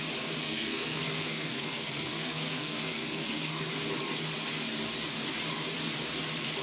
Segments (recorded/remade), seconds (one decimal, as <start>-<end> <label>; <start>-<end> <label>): 0.0-0.4 recorded; 0.4-3.7 remade; 3.7-6.6 recorded